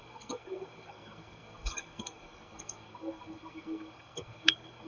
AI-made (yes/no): yes